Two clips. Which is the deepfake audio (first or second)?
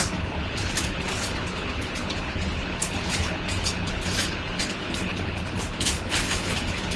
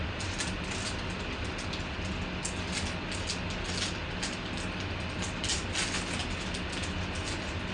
first